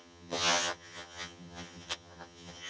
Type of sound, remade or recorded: remade